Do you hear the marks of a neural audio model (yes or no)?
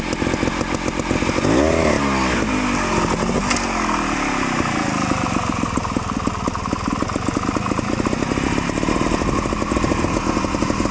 no